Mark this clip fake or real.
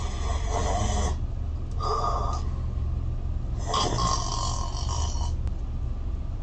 real